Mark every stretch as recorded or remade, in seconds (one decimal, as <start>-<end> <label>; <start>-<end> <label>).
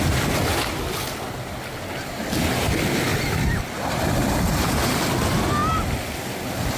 0.0-3.1 recorded; 3.1-4.0 remade; 4.0-6.8 recorded